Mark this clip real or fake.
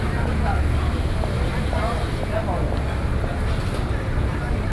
real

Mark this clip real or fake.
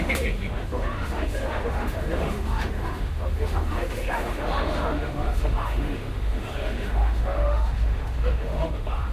fake